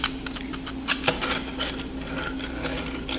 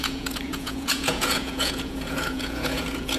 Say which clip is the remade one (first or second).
second